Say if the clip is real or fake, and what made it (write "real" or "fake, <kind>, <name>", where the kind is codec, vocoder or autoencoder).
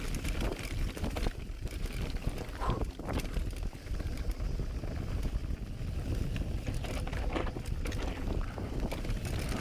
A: real